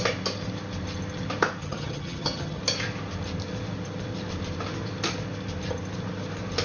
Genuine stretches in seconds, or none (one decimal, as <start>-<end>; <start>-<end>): 0.0-1.6; 2.6-6.6